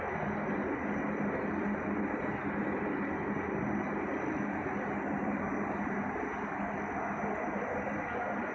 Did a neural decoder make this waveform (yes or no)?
no